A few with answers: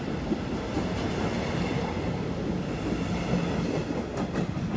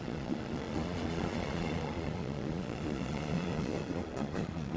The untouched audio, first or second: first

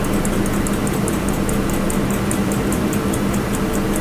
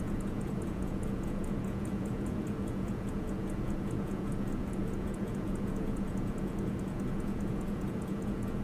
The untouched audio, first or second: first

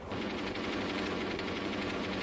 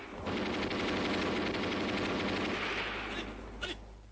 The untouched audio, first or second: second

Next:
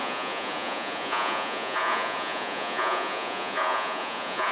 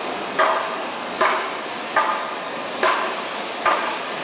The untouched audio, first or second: second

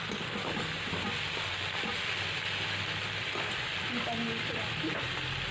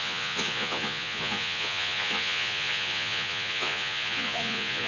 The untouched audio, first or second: first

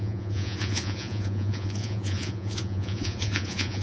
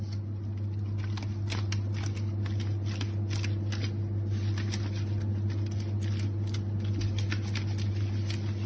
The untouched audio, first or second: second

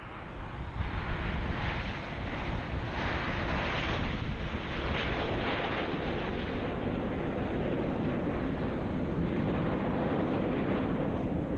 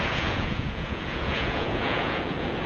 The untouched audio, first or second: first